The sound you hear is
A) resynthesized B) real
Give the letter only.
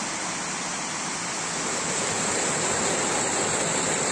B